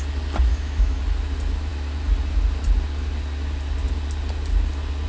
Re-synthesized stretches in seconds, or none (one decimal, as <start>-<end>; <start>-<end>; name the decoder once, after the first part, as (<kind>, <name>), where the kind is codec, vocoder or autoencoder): 0.5-1.0 (autoencoder, DAC-VAE)